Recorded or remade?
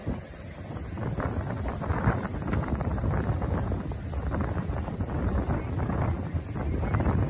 recorded